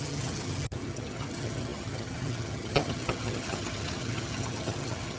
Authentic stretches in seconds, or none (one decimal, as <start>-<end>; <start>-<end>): none